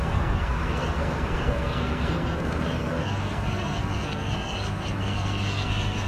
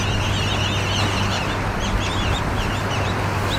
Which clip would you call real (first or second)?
second